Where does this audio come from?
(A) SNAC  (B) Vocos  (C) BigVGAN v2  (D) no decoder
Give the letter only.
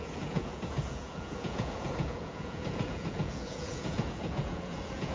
B